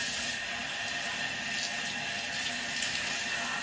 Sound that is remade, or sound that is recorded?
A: recorded